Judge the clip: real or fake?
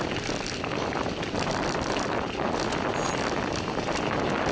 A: real